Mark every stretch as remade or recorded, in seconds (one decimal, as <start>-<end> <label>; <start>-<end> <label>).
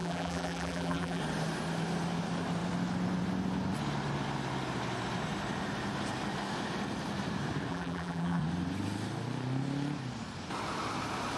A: 0.0-1.2 remade; 1.2-7.7 recorded; 7.7-8.4 remade; 8.4-11.4 recorded